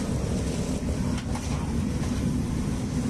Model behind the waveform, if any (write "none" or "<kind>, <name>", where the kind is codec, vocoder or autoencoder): none